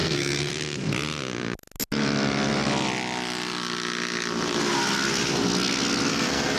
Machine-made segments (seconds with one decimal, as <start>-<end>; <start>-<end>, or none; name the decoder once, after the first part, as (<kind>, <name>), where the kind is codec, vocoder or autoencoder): 0.0-0.5 (codec, SNAC); 6.1-6.6